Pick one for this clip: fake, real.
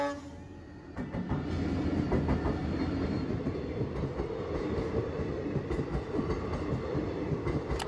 real